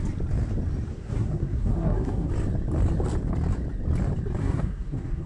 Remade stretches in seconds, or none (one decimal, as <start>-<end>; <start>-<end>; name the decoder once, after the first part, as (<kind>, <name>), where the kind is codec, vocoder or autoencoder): 0.9-2.3 (codec, SNAC); 4.4-5.3